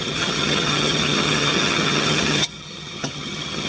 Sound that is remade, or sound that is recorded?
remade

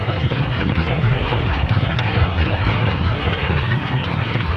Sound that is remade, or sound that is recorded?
remade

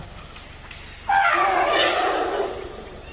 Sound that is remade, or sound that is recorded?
recorded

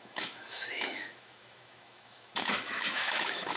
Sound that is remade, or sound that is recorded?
remade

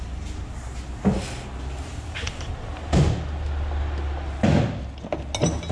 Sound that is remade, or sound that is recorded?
recorded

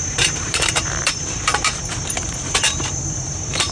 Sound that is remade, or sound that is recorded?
remade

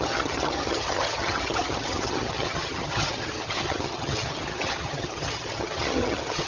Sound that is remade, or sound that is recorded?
remade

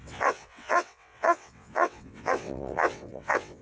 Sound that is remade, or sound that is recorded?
remade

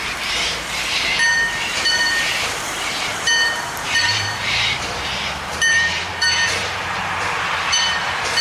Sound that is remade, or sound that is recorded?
remade